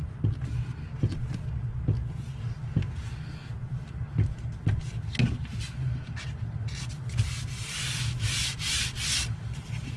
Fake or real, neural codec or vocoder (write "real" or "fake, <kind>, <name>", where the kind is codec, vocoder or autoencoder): real